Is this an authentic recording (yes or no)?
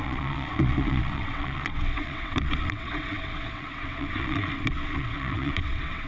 no